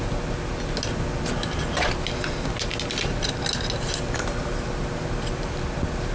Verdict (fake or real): real